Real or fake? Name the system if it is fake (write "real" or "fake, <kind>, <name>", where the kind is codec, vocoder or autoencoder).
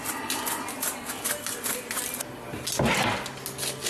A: real